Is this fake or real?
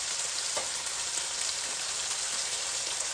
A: fake